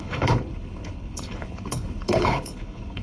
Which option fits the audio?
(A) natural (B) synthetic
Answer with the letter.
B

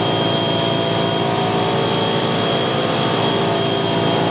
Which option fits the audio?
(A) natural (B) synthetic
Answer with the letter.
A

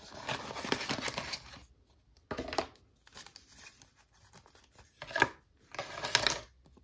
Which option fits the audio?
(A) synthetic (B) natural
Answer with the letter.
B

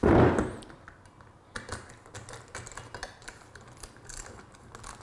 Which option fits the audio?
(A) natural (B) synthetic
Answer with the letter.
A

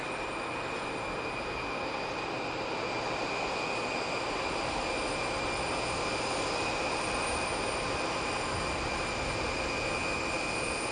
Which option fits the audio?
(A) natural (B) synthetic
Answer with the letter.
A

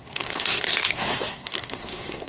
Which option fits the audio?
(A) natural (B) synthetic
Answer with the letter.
B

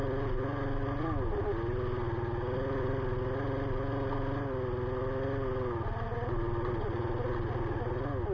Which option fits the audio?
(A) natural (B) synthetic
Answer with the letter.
A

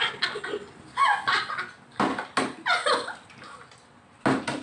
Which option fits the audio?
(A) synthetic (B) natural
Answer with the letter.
B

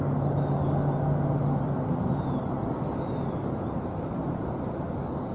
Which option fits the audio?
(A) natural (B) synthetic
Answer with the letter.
A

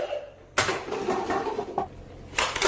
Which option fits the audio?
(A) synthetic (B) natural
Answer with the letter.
B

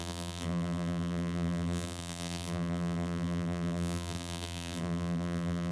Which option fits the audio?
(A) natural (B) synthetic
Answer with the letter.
B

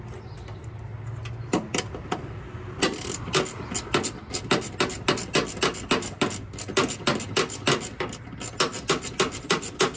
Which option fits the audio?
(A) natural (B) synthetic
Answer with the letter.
A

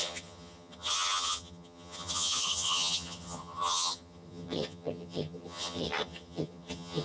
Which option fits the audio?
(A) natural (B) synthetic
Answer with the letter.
B